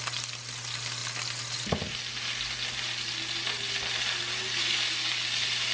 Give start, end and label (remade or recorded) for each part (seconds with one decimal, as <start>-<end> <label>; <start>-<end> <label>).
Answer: 0.0-5.7 recorded